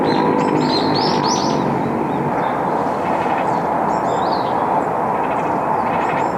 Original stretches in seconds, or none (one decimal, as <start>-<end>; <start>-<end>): 0.0-6.4